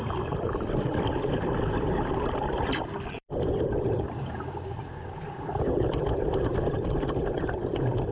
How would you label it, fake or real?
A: fake